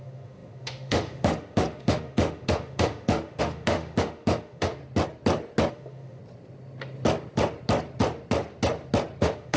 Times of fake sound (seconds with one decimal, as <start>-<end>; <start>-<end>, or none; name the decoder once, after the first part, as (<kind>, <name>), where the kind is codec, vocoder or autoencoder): 0.0-4.8 (autoencoder, DAC-VAE); 5.7-6.2; 9.2-9.6